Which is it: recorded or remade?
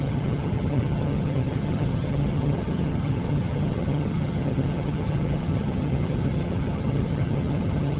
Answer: remade